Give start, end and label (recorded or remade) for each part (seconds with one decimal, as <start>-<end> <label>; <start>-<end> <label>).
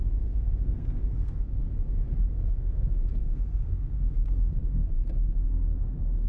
0.0-1.7 remade; 1.7-2.3 recorded; 2.3-4.8 remade; 4.8-5.5 recorded; 5.5-6.3 remade